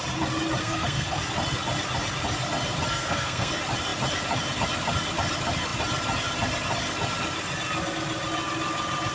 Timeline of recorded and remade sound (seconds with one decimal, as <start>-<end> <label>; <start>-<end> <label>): 0.0-0.6 recorded; 0.6-1.2 remade; 1.2-2.9 recorded; 2.9-3.5 remade; 3.5-9.1 recorded